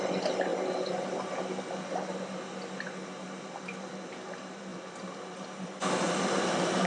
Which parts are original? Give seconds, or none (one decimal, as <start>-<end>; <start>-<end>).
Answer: 0.0-4.7